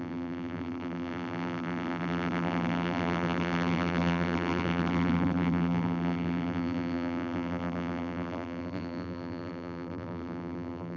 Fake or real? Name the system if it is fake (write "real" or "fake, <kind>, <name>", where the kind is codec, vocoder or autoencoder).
fake, vocoder, BigVGAN v2